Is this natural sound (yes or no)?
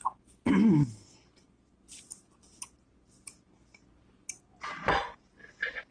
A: yes